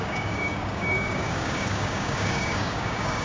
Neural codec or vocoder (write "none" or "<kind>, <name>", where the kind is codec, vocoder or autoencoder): codec, DAC